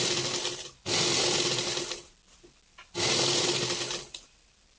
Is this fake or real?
real